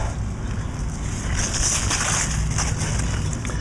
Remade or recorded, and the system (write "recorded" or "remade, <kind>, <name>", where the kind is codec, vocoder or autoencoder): recorded